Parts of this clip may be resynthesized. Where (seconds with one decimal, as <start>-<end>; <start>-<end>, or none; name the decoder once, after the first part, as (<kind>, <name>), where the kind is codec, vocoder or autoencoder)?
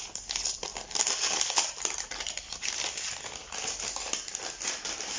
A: none